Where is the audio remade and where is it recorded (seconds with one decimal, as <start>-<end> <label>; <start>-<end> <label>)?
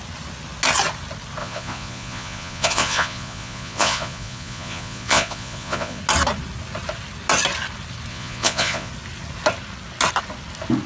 0.0-1.4 recorded; 1.4-6.0 remade; 6.0-8.1 recorded; 8.1-8.9 remade; 8.9-10.9 recorded